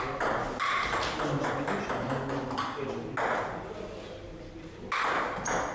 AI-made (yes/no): no